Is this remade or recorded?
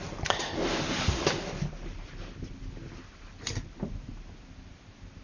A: recorded